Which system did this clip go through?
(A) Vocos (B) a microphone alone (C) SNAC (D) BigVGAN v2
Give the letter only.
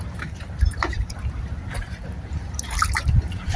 D